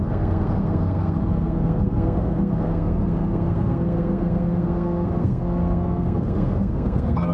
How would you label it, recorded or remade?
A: remade